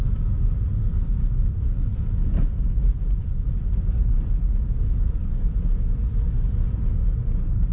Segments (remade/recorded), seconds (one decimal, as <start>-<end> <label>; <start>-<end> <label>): 0.0-7.7 recorded